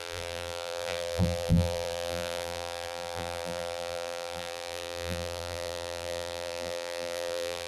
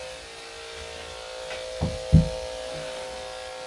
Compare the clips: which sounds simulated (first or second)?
first